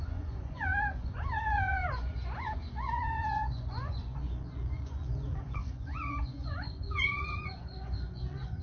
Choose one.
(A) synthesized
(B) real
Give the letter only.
A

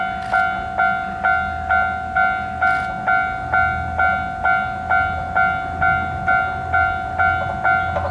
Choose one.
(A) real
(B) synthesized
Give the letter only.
A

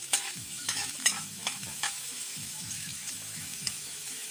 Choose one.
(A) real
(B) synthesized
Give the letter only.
B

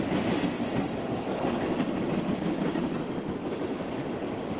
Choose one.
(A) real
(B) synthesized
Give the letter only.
A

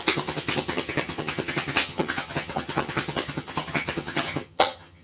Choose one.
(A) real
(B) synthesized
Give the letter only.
B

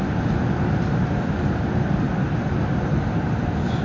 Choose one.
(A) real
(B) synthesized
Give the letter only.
A